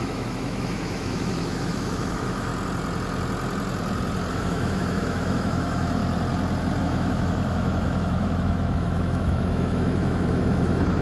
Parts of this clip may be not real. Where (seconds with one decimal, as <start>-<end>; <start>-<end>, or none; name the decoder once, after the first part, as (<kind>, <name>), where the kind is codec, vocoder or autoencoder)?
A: 0.0-2.5 (autoencoder, DAC-VAE); 4.3-6.0; 6.8-11.0

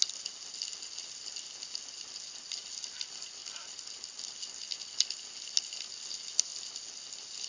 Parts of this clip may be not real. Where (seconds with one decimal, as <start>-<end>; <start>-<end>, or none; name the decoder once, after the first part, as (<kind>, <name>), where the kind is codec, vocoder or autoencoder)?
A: none